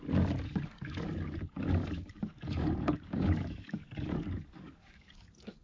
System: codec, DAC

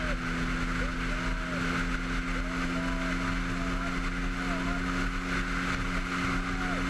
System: none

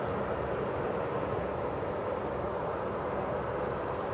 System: none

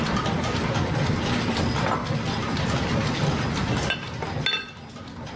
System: none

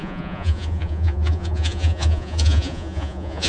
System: vocoder, Vocos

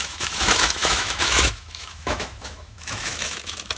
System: autoencoder, DAC-VAE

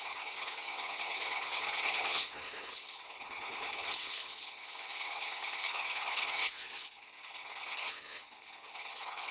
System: codec, HILCodec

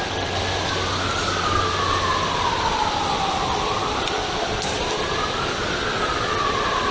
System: none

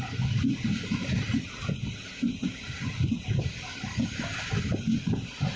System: none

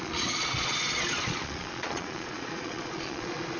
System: vocoder, Vocos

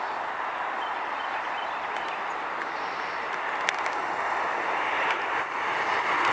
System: none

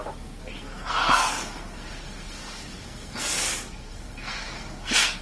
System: codec, SNAC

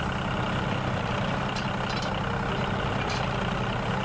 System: none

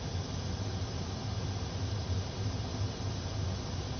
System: none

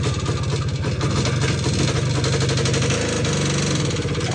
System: none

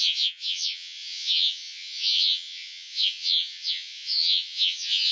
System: vocoder, Vocos